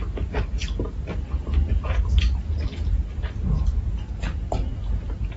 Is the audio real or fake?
real